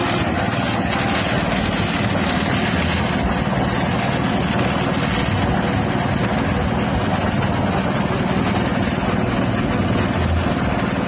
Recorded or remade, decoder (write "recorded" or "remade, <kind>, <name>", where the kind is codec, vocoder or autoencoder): recorded